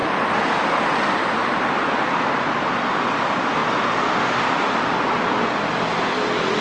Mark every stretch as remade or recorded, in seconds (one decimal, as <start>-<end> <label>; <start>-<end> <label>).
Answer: 0.0-2.5 remade; 2.5-6.6 recorded